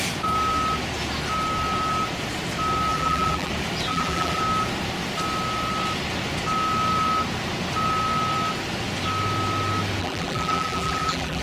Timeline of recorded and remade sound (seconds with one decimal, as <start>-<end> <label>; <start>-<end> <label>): 0.0-2.9 recorded; 2.9-3.5 remade; 3.5-3.9 recorded; 3.9-4.4 remade; 4.4-10.0 recorded; 10.0-11.4 remade